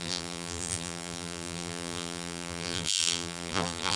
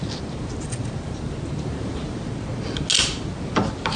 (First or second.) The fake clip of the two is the first